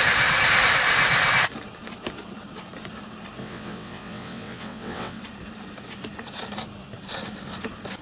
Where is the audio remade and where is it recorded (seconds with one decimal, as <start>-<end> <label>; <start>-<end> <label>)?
0.0-3.4 recorded; 3.4-5.2 remade; 5.2-8.0 recorded